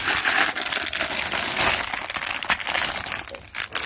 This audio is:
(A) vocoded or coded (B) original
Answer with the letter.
B